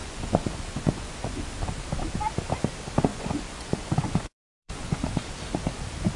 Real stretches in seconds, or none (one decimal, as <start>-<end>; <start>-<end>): 1.5-3.1; 5.2-6.2